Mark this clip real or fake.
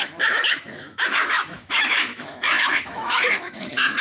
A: fake